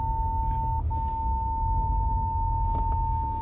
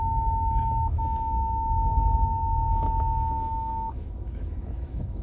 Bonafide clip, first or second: first